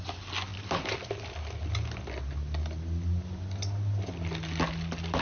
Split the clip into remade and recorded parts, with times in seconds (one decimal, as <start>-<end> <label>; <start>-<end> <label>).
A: 0.0-0.5 recorded; 0.5-1.3 remade; 1.3-5.2 recorded